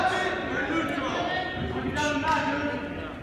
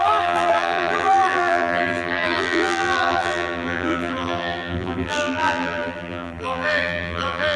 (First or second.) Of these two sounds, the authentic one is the first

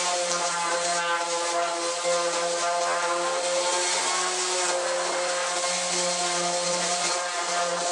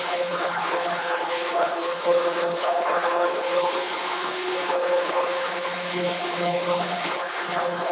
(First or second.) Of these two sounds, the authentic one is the first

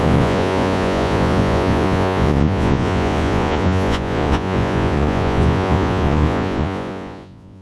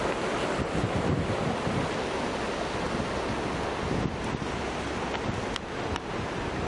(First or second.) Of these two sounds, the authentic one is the second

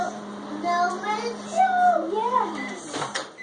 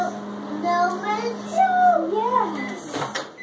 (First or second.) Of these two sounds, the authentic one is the second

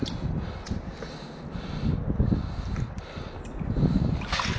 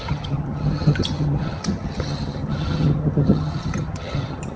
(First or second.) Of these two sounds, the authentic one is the first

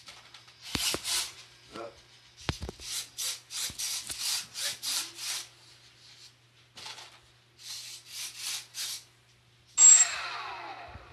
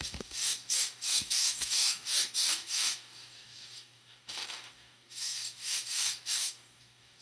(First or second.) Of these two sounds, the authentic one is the first